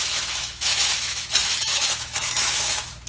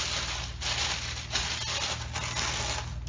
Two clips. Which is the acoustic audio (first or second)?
second